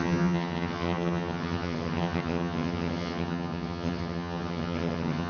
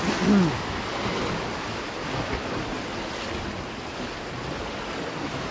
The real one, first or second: second